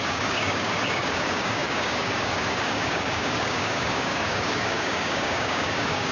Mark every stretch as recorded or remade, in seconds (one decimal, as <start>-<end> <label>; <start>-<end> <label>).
0.0-6.1 remade

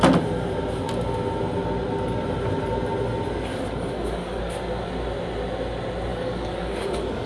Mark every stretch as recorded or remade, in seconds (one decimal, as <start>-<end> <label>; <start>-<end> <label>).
0.0-3.5 recorded; 3.5-4.4 remade; 4.4-6.1 recorded; 6.1-7.3 remade

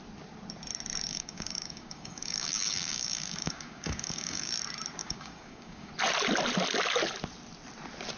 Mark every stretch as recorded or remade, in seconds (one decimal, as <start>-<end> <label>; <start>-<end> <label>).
0.0-1.1 recorded; 1.1-4.5 remade; 4.5-5.0 recorded; 5.0-5.9 remade; 5.9-8.2 recorded